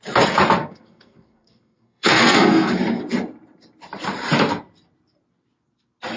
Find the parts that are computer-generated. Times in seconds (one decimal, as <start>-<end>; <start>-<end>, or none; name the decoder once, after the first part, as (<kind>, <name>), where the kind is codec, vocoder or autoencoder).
0.6-2.7 (codec, SNAC)